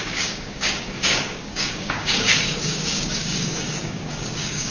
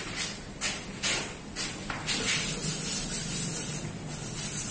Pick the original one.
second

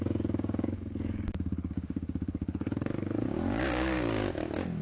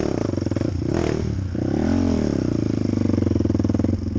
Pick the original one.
second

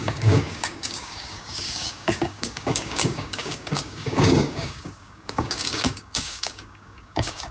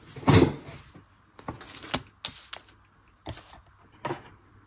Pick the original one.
second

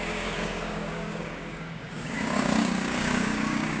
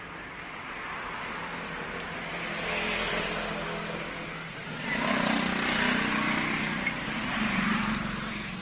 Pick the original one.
second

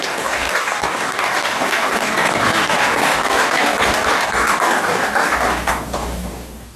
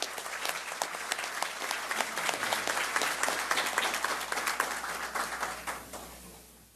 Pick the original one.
second